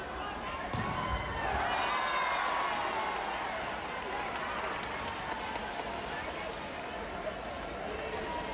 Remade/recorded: recorded